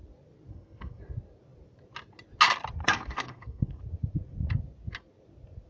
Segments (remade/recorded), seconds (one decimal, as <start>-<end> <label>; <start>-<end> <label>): 0.0-0.5 recorded; 0.5-1.0 remade; 1.0-2.8 recorded; 2.8-3.8 remade; 3.8-5.7 recorded